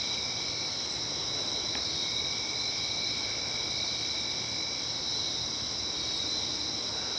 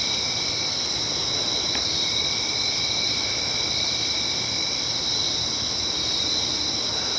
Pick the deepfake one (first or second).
second